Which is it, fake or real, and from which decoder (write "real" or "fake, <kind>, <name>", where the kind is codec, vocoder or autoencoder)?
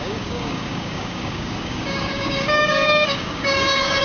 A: fake, codec, DAC